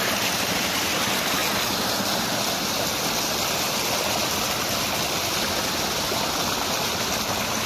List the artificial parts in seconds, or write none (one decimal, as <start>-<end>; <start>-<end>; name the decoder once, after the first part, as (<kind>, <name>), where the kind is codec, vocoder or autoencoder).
none